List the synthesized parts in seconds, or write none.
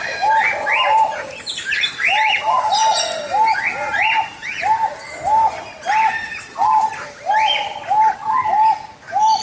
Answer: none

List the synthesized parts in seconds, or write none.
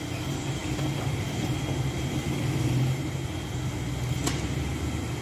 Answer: 0.6-2.7 (vocoder, BigVGAN v2)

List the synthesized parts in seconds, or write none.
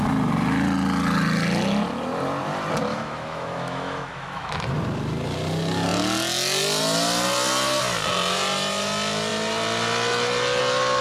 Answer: 2.9-4.5 (autoencoder, DAC-VAE)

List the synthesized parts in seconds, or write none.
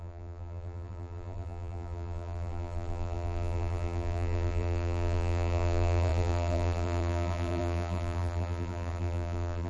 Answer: 0.0-9.7 (vocoder, BigVGAN v2)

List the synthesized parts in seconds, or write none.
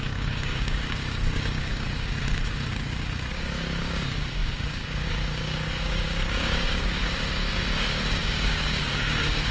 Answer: 0.0-9.5 (codec, DAC)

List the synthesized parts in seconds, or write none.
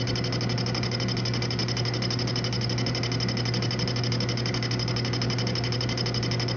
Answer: none